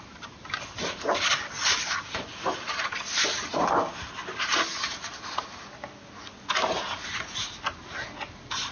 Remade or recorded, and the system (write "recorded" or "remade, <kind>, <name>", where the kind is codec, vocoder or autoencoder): recorded